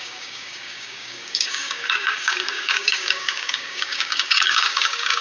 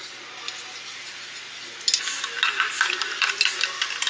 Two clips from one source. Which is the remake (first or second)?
first